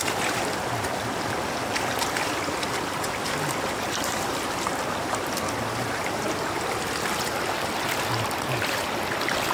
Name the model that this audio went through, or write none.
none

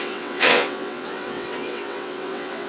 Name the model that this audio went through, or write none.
vocoder, WaveNeXt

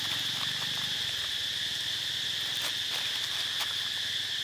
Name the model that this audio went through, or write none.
none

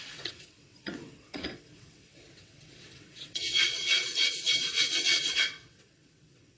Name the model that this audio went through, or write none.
vocoder, WaveNeXt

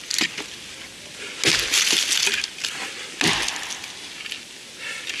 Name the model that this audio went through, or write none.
none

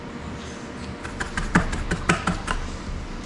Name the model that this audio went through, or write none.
vocoder, BigVGAN v2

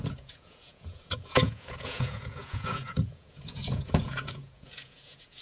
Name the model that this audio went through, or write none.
vocoder, Vocos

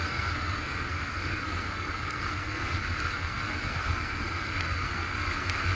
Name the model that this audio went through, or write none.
codec, SNAC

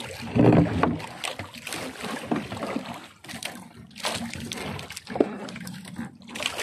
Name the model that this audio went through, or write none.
none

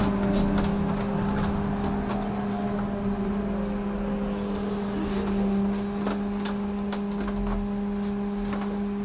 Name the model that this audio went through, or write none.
none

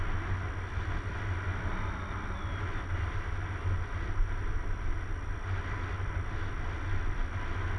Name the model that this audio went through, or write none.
none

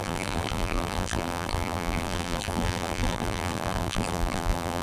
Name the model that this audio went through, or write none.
vocoder, BigVGAN v2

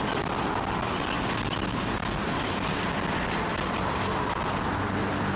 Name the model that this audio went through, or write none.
none